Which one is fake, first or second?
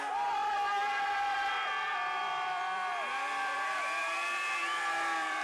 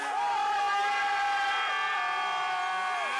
first